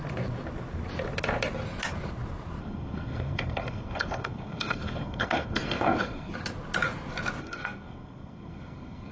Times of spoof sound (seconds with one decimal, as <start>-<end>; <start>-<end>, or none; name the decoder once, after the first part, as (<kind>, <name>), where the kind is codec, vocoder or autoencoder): 2.6-6.3 (codec, SNAC); 7.4-9.1